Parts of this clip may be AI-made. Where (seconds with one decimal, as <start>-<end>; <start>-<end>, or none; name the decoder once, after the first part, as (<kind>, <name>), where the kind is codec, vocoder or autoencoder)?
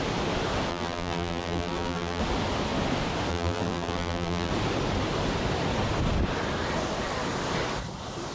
0.7-2.2 (vocoder, BigVGAN v2); 3.3-4.5